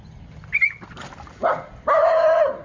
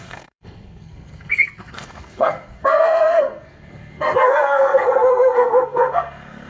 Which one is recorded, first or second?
first